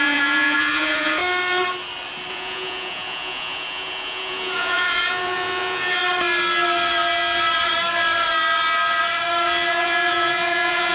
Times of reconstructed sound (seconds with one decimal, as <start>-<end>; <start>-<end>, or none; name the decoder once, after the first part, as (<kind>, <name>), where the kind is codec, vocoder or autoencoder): 0.0-1.2 (vocoder, Vocos); 2.3-6.0; 9.7-10.9